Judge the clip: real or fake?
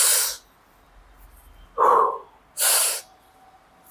real